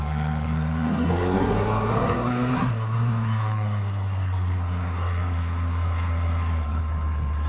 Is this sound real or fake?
fake